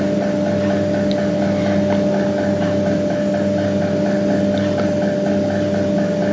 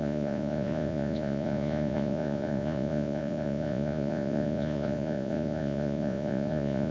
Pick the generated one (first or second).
second